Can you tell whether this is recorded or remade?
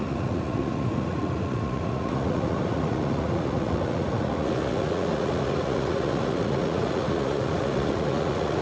remade